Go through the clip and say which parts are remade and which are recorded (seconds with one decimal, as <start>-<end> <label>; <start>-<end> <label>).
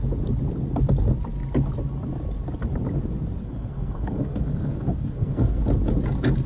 0.0-3.4 recorded; 3.4-5.6 remade; 5.6-6.5 recorded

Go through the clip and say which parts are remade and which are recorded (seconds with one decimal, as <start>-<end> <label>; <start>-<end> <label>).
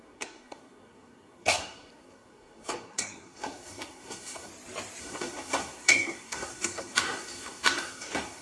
0.0-4.5 remade; 4.5-5.0 recorded; 5.0-8.4 remade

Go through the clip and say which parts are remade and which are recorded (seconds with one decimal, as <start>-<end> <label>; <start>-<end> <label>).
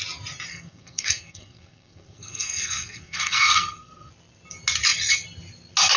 0.0-0.5 recorded; 0.5-4.1 remade; 4.1-6.0 recorded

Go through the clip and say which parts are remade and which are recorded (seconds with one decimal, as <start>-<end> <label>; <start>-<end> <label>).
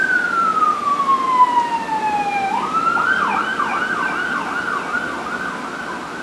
0.0-6.2 recorded